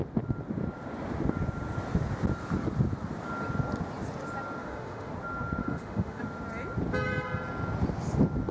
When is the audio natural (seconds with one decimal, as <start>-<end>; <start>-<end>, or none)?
0.0-4.6; 5.1-5.6; 6.2-8.5